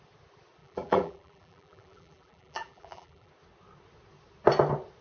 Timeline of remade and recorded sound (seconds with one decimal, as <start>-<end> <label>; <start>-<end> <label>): 0.0-0.6 recorded; 0.6-3.3 remade; 3.3-5.0 recorded